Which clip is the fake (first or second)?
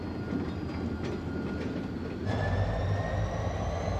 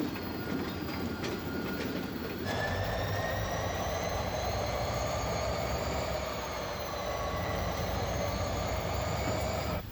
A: second